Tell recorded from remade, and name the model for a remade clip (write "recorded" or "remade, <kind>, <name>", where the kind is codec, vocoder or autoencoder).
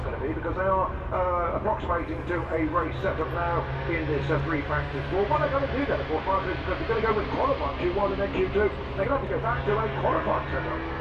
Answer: recorded